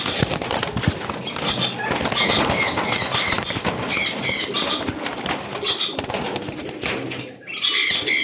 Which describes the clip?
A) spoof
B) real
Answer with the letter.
B